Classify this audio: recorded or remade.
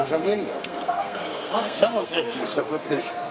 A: remade